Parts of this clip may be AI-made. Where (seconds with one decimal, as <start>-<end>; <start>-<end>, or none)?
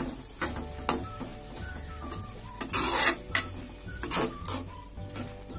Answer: none